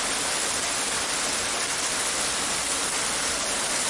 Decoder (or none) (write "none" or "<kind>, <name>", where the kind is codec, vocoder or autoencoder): none